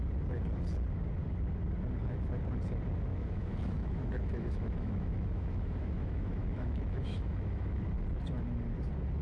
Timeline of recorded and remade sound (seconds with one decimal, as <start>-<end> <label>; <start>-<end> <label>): 0.0-3.1 recorded; 3.1-7.8 remade; 7.8-9.2 recorded